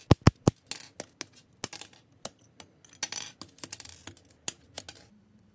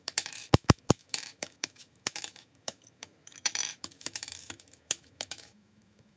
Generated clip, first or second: second